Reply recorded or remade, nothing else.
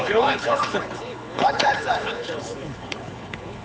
remade